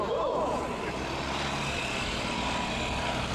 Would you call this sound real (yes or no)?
yes